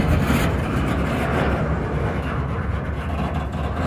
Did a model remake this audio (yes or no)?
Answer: no